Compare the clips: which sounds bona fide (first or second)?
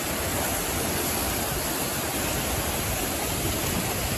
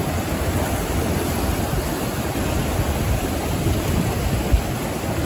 first